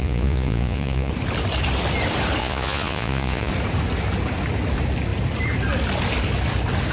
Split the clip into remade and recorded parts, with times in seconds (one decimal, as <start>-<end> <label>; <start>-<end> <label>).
0.0-1.1 remade; 1.1-2.4 recorded; 2.4-3.5 remade; 3.5-6.9 recorded